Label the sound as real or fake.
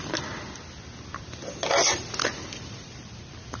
real